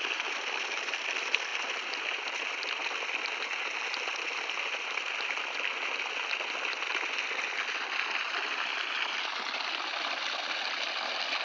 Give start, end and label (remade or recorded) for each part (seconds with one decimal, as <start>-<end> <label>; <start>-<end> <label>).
0.0-11.4 recorded